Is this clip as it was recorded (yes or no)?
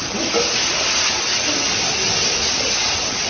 yes